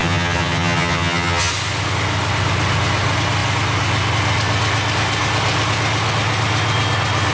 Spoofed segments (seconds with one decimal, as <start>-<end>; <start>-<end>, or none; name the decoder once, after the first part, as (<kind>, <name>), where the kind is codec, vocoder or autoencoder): 0.0-1.5 (vocoder, HiFi-GAN)